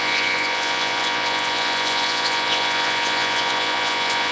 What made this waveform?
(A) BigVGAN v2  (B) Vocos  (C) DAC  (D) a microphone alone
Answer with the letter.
B